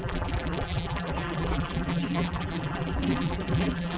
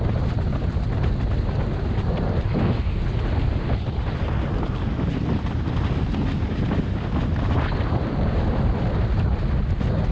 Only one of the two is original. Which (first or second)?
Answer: second